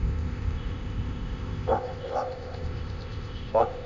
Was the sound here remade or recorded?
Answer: remade